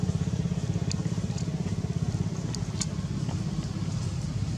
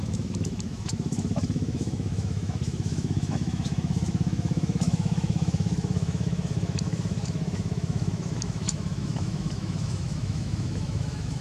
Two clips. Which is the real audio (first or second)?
first